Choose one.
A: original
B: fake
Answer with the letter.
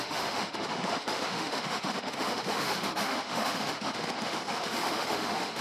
B